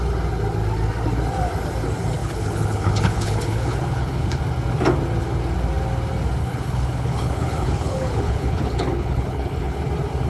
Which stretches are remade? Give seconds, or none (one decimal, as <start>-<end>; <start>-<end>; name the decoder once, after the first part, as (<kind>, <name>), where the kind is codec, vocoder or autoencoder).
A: 2.2-4.4 (codec, HILCodec); 6.4-9.8